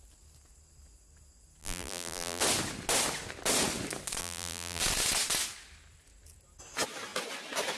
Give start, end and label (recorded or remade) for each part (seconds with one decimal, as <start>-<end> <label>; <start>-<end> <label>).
0.0-1.6 recorded; 1.6-2.4 remade; 2.4-4.2 recorded; 4.2-4.8 remade; 4.8-7.8 recorded